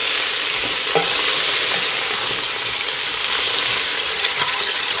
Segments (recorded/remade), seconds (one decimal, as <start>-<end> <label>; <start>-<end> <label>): 0.0-4.0 recorded; 4.0-5.0 remade